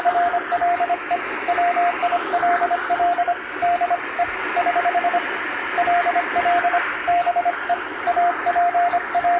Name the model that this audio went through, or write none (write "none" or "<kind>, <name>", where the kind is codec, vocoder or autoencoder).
none